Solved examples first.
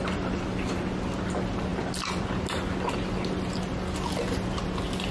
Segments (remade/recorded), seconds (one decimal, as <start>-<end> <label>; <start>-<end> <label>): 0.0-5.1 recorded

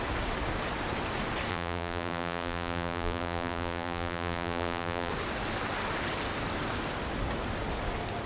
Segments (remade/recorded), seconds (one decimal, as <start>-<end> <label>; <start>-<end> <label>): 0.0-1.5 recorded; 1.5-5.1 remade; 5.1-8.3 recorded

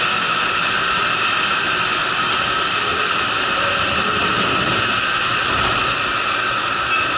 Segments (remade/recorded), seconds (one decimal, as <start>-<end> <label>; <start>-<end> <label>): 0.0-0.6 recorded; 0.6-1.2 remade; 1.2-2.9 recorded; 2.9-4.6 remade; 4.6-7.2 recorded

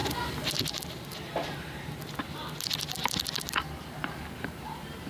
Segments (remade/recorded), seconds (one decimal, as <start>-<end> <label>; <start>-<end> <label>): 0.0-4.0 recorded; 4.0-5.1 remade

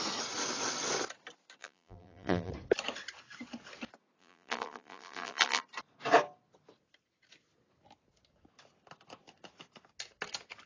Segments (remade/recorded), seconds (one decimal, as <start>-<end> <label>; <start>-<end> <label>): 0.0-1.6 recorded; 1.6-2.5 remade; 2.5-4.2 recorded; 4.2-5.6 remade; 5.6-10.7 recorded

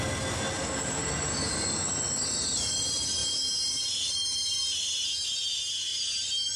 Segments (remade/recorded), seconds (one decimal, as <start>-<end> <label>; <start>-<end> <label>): 0.0-5.9 recorded; 5.9-6.6 remade